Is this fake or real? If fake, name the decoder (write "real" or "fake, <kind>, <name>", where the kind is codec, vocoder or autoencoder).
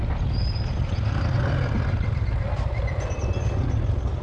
real